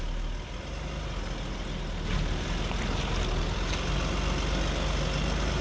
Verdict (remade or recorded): recorded